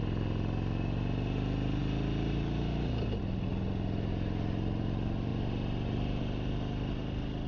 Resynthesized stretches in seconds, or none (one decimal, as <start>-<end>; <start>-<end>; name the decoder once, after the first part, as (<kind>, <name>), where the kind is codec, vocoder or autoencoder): none